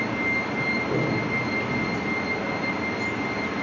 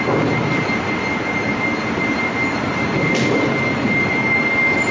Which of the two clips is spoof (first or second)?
second